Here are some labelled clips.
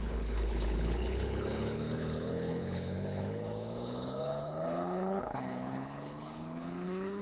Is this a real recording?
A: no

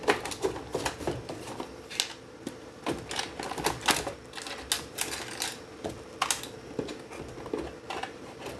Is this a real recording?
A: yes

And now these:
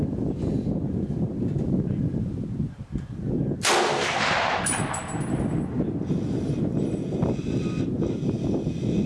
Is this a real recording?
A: yes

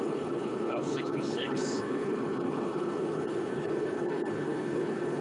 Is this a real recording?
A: no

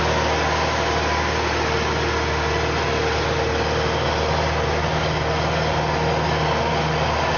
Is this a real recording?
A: yes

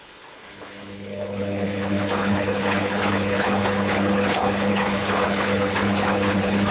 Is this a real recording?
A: no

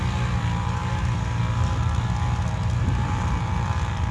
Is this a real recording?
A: yes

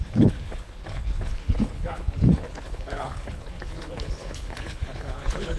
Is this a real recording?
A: no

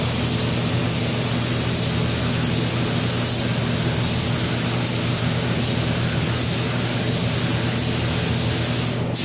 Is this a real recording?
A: yes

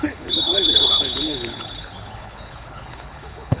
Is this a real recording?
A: no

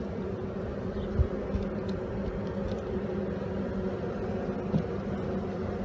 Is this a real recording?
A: yes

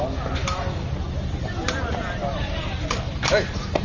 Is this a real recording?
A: yes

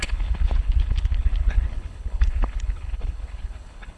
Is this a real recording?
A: no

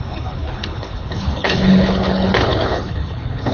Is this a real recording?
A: no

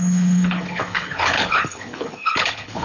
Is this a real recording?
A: no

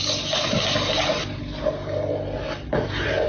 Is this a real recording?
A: yes